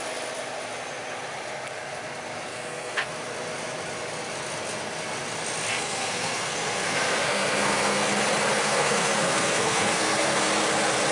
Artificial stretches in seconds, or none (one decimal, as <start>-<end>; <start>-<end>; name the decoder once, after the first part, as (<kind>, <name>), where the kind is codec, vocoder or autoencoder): 2.5-3.1 (codec, SNAC); 5.7-8.1; 8.6-10.5